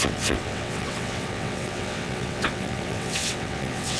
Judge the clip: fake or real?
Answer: fake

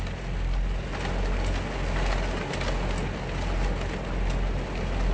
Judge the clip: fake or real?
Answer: real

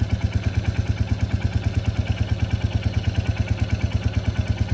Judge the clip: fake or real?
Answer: real